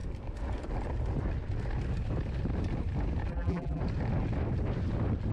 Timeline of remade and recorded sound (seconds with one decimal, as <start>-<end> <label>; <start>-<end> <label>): 0.0-3.3 recorded; 3.3-3.8 remade; 3.8-5.3 recorded